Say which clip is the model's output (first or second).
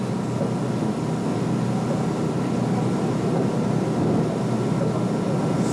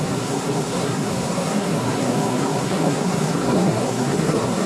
second